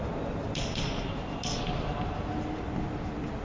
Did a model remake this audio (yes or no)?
no